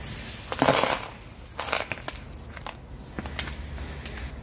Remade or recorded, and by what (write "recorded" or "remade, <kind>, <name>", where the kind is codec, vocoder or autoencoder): recorded